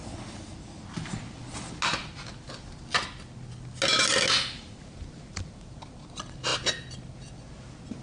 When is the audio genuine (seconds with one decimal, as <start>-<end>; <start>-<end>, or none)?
0.0-8.0